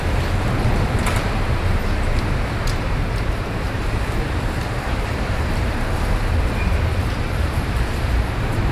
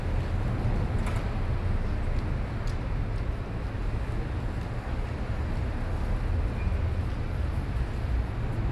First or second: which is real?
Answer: second